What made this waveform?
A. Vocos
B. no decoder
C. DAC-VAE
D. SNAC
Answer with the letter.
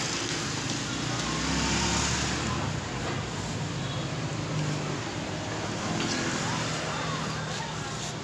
B